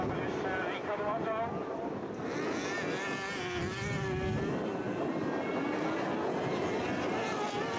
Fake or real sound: real